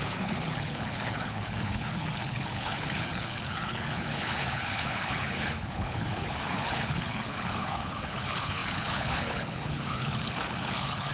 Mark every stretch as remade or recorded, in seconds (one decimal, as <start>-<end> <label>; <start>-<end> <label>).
0.0-11.1 remade